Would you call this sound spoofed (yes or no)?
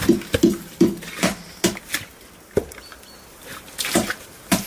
no